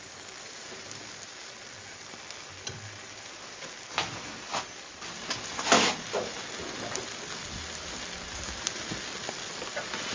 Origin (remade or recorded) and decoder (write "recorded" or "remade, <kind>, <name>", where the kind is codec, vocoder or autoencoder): recorded